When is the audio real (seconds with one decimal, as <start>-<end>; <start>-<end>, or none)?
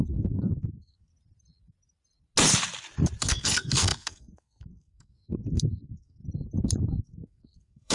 1.1-3.2; 6.2-6.8